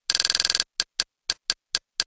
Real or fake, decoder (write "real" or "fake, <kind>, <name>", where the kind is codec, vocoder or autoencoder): real